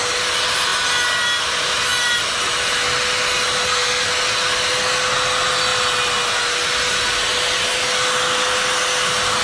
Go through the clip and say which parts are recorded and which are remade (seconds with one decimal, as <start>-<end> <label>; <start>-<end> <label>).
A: 0.0-3.6 recorded; 3.6-4.1 remade; 4.1-9.4 recorded